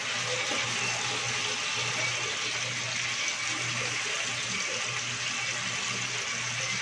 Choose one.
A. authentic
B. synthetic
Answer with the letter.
A